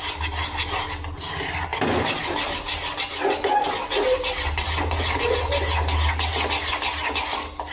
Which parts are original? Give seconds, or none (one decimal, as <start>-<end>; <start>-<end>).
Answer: 0.0-7.7